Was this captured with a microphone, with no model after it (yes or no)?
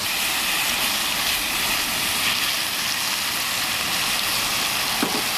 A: yes